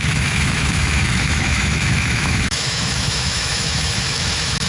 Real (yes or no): no